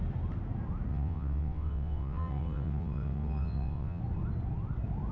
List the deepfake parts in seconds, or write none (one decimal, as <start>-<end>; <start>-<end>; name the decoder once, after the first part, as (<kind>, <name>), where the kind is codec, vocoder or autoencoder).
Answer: 0.9-4.0 (vocoder, WaveNeXt)